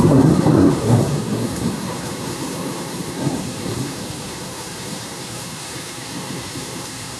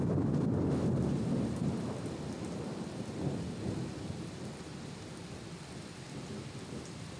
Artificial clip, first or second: first